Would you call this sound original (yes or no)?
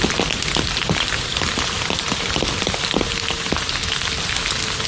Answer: yes